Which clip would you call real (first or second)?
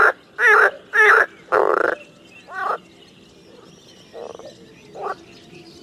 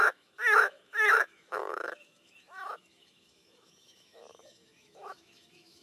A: first